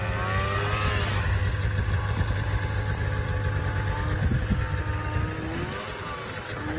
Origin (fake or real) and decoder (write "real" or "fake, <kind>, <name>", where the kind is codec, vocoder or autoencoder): real